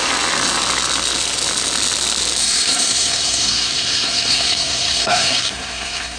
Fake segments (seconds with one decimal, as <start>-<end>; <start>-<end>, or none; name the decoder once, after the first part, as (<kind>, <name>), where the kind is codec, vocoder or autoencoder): 2.4-6.2 (codec, SNAC)